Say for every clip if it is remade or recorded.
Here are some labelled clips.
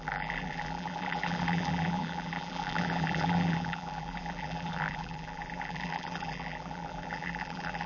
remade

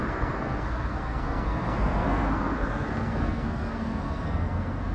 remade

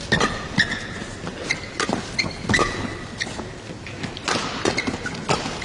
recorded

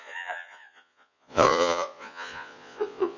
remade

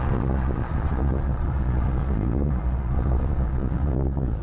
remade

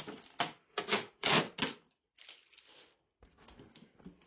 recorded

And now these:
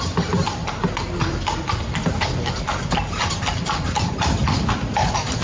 recorded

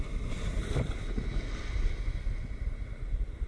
recorded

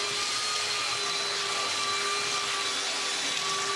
recorded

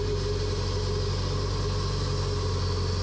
recorded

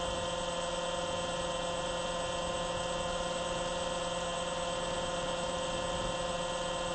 recorded